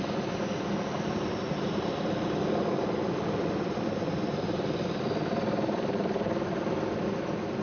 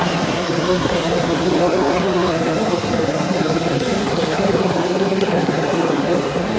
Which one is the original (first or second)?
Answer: first